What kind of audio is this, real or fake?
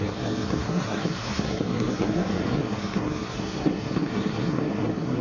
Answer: fake